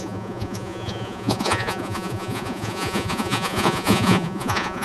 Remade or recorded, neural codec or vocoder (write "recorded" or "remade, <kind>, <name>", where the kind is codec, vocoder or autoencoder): remade, vocoder, Vocos